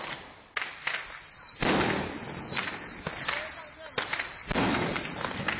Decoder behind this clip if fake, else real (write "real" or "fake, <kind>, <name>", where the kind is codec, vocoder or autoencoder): real